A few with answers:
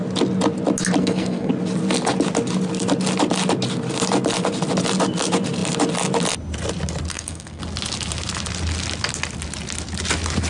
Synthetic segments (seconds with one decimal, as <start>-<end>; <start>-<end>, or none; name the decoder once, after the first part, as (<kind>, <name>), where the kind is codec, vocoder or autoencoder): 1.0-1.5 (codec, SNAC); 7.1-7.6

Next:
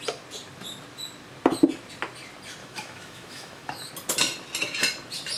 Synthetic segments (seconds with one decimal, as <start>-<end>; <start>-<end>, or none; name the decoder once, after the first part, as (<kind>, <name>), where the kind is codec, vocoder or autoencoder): 2.6-3.9 (autoencoder, DAC-VAE)

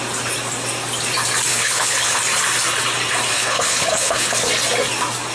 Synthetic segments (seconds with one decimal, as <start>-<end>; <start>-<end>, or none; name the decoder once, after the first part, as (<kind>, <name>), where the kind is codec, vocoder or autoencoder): 1.5-2.2 (codec, HILCodec); 3.3-4.5